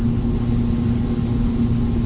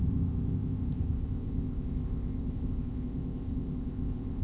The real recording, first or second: first